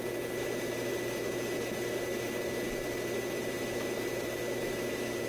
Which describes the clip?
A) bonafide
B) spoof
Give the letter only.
A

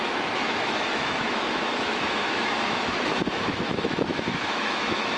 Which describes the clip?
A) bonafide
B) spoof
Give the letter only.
B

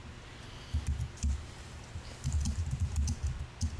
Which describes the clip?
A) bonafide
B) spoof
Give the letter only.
A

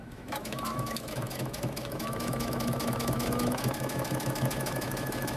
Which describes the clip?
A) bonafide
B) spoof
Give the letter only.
B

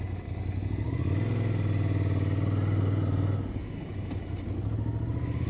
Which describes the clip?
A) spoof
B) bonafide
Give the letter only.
B